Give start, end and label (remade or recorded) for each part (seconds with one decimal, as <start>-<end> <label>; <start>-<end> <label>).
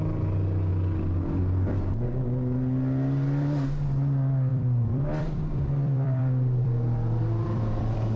0.0-4.5 recorded; 4.5-8.2 remade